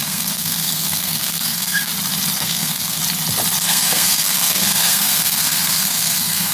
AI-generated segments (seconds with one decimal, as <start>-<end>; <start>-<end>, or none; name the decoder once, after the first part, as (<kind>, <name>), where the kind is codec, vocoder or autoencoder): 0.0-1.9 (codec, SNAC); 2.4-3.0; 3.6-6.5